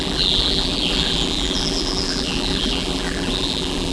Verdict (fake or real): fake